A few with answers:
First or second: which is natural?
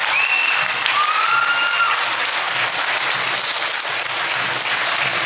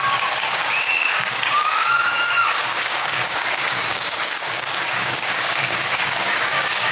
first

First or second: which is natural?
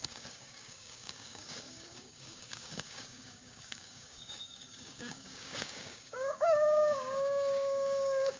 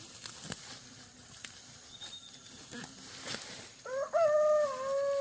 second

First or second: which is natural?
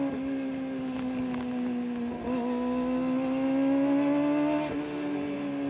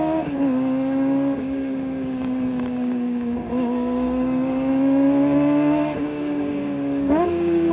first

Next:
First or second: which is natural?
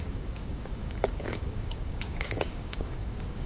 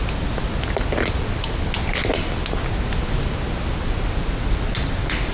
second